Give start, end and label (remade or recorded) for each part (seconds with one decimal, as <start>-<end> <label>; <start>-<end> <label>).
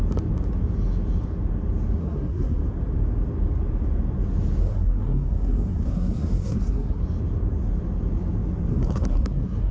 0.0-2.0 recorded; 2.0-2.6 remade; 2.6-4.6 recorded; 4.6-7.0 remade; 7.0-8.7 recorded; 8.7-9.7 remade